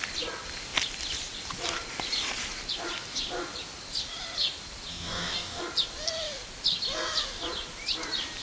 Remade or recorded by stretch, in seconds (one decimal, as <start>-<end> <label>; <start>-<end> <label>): 0.0-4.9 recorded; 4.9-5.6 remade; 5.6-8.4 recorded